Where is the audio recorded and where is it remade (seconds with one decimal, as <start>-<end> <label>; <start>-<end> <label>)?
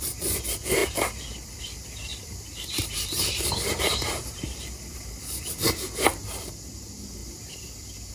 0.0-2.1 recorded; 2.1-5.5 remade; 5.5-8.1 recorded